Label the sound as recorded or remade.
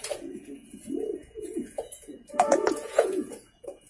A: remade